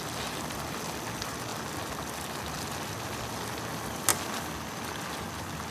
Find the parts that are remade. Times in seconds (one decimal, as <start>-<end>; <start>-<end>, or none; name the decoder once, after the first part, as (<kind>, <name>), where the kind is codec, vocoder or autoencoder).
none